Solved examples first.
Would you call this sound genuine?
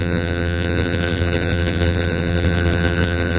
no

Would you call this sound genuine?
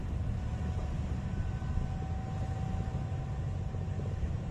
yes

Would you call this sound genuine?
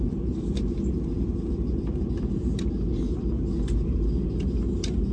yes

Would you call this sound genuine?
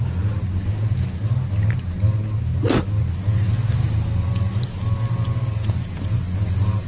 yes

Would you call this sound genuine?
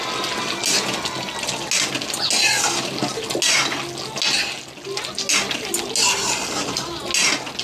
yes